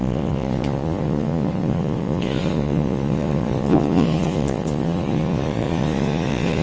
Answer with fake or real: fake